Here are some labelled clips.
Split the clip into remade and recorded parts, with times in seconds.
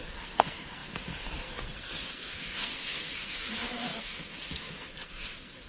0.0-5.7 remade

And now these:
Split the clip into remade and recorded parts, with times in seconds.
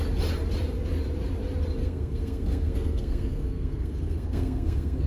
0.0-1.8 recorded; 1.8-5.1 remade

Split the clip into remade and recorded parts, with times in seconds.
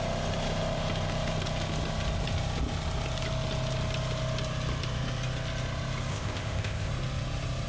0.0-6.1 recorded; 6.1-6.9 remade; 6.9-7.7 recorded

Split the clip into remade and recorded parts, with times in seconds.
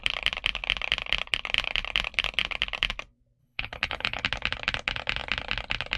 0.0-3.4 recorded; 3.4-4.2 remade; 4.2-6.0 recorded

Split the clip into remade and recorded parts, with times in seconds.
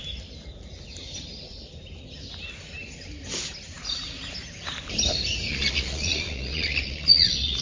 0.0-5.5 recorded; 5.5-7.6 remade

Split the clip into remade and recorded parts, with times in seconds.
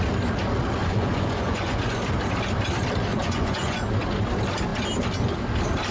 0.0-0.8 recorded; 0.8-2.0 remade; 2.0-3.1 recorded; 3.1-3.8 remade; 3.8-5.9 recorded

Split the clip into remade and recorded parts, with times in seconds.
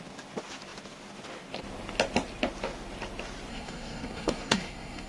0.0-3.5 recorded; 3.5-5.1 remade